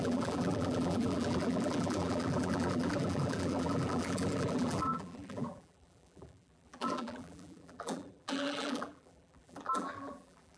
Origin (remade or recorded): remade